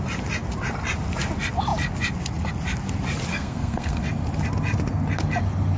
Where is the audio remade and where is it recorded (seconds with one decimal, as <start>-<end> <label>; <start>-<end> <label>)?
0.0-3.3 recorded; 3.3-4.0 remade; 4.0-5.8 recorded